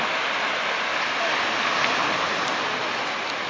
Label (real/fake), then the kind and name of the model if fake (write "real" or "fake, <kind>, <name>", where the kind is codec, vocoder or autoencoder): real